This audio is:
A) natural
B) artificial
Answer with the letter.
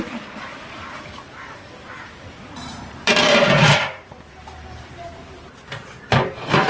B